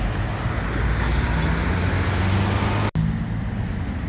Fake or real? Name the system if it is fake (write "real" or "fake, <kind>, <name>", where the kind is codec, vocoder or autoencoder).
real